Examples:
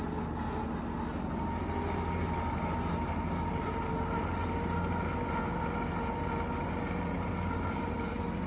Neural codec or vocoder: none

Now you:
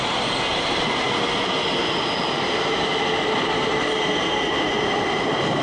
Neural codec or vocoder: none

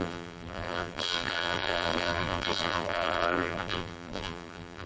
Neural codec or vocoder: vocoder, BigVGAN v2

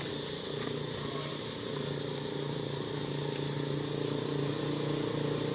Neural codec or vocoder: none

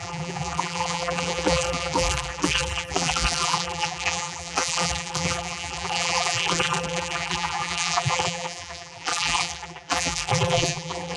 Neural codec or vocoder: vocoder, BigVGAN v2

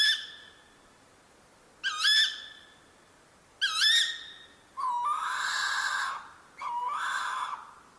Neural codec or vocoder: none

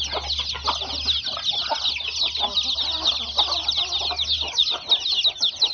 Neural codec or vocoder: none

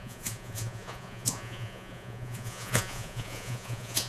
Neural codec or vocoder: vocoder, Vocos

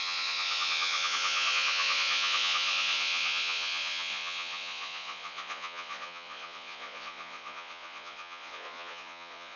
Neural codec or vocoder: vocoder, Vocos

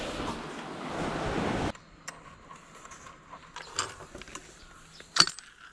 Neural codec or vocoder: none